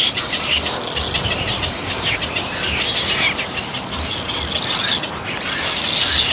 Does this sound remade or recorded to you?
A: recorded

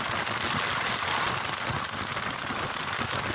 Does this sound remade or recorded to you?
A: recorded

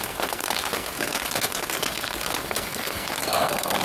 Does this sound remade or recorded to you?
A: remade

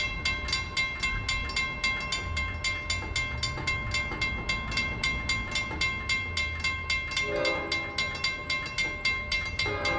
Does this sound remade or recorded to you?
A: recorded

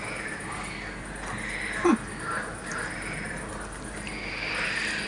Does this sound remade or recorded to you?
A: recorded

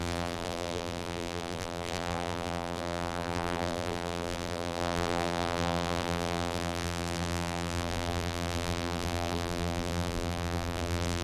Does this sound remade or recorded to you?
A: remade